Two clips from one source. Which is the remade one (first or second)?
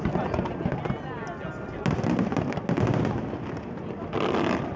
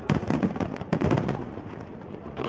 second